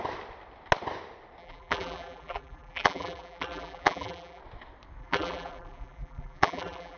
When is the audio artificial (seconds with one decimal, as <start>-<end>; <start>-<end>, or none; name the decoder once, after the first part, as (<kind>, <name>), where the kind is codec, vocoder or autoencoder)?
1.4-4.4 (vocoder, BigVGAN v2); 5.0-7.0